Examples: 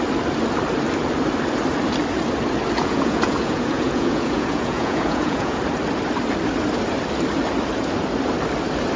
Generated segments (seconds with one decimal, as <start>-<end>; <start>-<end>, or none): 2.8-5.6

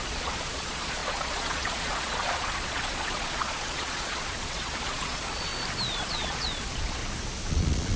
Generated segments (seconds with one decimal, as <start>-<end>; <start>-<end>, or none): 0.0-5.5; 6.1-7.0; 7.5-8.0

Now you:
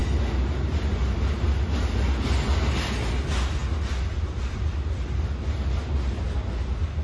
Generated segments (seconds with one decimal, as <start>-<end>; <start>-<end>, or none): none